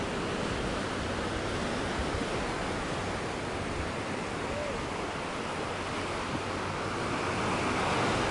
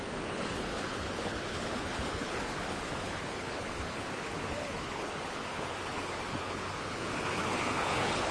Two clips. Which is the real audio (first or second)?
first